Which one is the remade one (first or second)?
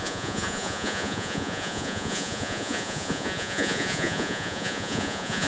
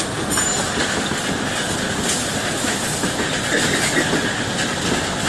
first